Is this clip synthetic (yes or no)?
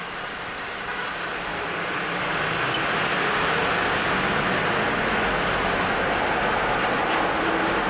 no